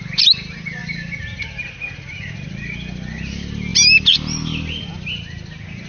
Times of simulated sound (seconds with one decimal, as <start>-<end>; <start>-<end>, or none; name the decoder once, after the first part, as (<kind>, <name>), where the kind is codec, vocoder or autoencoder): none